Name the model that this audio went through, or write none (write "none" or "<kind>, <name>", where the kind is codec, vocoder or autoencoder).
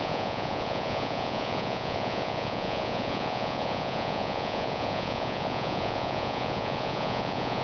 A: vocoder, Vocos